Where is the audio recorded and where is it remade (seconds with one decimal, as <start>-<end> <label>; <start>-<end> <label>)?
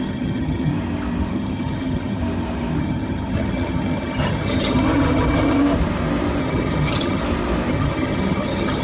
0.0-0.7 remade; 0.7-1.3 recorded; 1.3-2.2 remade; 2.2-2.8 recorded; 2.8-5.6 remade; 5.6-6.4 recorded; 6.4-7.2 remade; 7.2-7.7 recorded; 7.7-8.8 remade